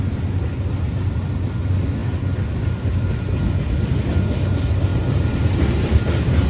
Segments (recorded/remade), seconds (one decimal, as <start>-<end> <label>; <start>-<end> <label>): 0.0-4.9 recorded; 4.9-5.9 remade; 5.9-6.5 recorded